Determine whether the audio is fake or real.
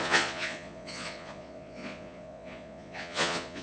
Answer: fake